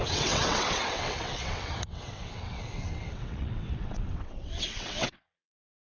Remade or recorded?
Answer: remade